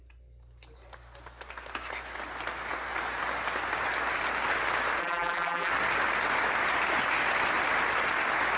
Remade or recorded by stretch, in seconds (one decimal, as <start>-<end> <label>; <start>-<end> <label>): 0.0-5.0 recorded; 5.0-5.7 remade; 5.7-8.6 recorded